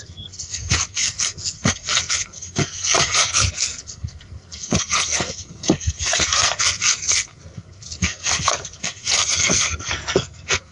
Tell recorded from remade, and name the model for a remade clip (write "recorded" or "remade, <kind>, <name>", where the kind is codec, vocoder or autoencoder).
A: remade, codec, SNAC